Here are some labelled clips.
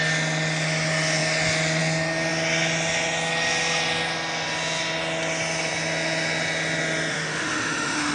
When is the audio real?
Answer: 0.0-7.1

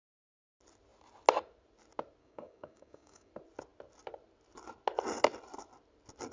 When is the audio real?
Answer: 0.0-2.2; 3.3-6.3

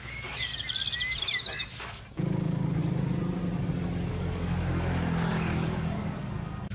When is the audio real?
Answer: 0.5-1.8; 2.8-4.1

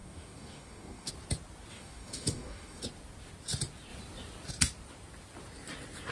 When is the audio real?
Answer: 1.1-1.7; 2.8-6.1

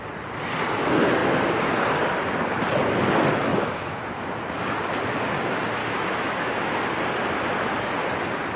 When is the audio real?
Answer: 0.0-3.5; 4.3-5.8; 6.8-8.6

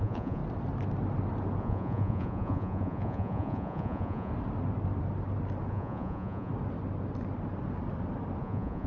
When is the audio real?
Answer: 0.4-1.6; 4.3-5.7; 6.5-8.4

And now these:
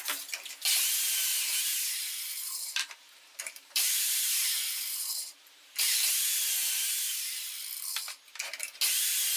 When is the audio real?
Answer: 0.0-1.3; 5.9-6.6; 7.3-9.4

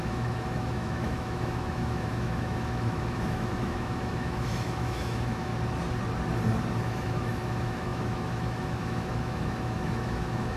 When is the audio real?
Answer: 5.5-6.8